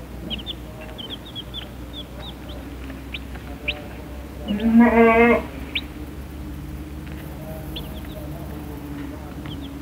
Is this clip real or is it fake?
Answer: real